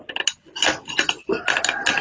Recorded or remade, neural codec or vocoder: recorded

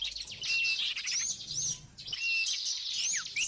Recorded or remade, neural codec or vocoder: recorded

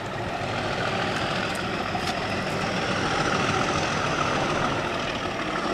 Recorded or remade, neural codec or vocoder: recorded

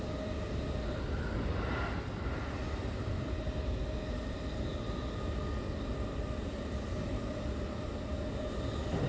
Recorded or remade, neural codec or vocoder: recorded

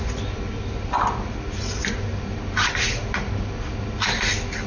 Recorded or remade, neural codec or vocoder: recorded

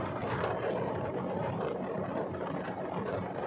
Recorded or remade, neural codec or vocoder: remade, vocoder, BigVGAN v2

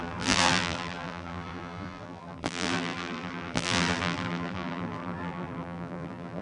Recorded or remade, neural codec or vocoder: remade, vocoder, BigVGAN v2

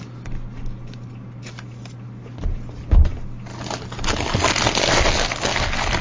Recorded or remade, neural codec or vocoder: recorded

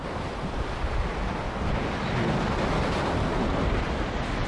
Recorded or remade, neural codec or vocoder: recorded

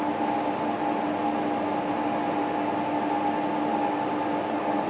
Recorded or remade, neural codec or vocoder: recorded